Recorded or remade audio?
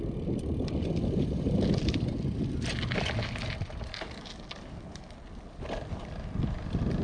recorded